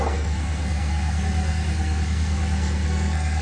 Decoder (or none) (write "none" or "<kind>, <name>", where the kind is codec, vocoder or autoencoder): codec, SNAC